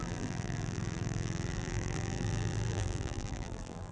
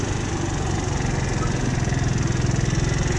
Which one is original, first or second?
second